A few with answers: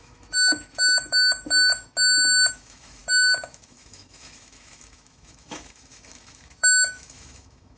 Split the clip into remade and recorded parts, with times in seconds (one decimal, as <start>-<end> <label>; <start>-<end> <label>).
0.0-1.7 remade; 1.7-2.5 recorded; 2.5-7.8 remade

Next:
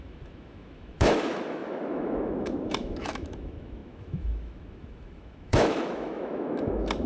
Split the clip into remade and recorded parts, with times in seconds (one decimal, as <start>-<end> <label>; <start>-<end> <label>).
0.0-7.1 remade

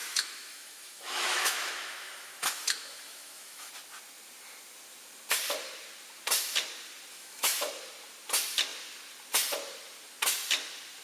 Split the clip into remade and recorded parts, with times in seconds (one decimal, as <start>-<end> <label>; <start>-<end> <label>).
0.0-3.7 remade; 3.7-7.1 recorded; 7.1-7.7 remade; 7.7-11.0 recorded